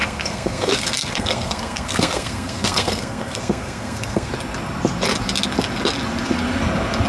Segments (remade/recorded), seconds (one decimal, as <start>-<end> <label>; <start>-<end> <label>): 0.0-4.3 remade; 4.3-7.1 recorded

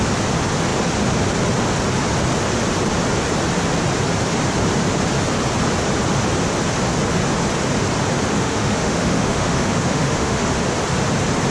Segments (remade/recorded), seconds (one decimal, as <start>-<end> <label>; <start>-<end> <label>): 0.0-8.3 recorded; 8.3-10.5 remade; 10.5-11.5 recorded

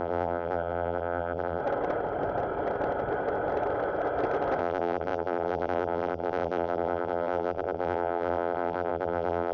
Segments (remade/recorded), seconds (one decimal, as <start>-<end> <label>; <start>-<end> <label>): 0.0-1.6 remade; 1.6-4.6 recorded; 4.6-9.5 remade

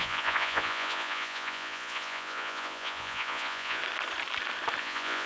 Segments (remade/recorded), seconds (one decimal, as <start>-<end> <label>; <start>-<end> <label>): 0.0-3.8 remade; 3.8-4.8 recorded; 4.8-5.3 remade

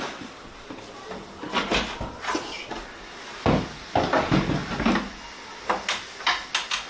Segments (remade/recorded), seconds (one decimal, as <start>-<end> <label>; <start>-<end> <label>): 0.0-6.9 recorded

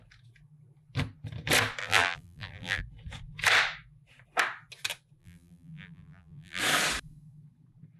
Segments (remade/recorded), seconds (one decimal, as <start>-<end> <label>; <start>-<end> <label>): 0.0-1.8 recorded; 1.8-2.8 remade; 2.8-5.2 recorded; 5.2-6.6 remade; 6.6-8.0 recorded

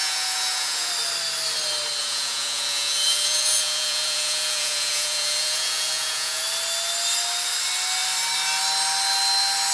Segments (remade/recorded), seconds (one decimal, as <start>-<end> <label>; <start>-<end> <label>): 0.0-0.9 remade; 0.9-2.0 recorded; 2.0-6.4 remade; 6.4-9.7 recorded